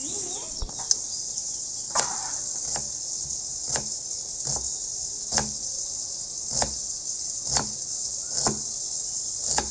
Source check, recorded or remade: recorded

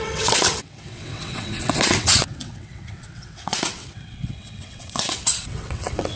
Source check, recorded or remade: remade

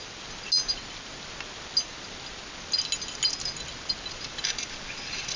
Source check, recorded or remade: recorded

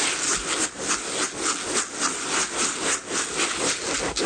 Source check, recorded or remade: recorded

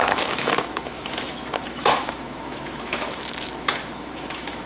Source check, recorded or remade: remade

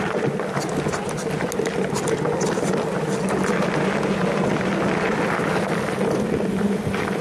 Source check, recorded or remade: recorded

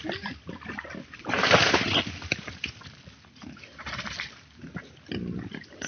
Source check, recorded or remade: recorded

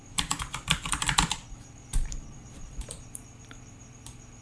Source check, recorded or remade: remade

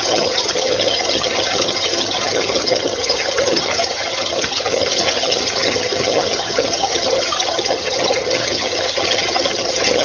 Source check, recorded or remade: remade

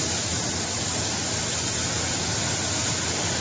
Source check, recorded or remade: recorded